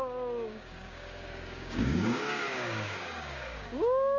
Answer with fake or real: fake